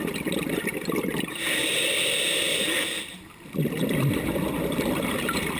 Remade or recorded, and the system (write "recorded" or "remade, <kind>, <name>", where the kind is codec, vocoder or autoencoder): recorded